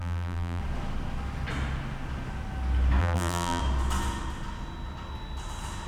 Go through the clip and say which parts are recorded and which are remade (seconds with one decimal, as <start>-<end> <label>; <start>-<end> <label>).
0.0-0.6 remade; 0.6-3.0 recorded; 3.0-3.6 remade; 3.6-5.9 recorded